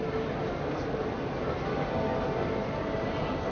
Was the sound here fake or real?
real